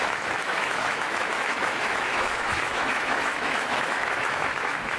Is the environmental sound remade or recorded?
remade